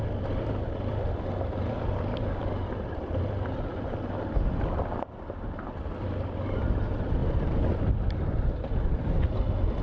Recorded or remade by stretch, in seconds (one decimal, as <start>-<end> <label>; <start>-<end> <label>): 0.0-9.8 recorded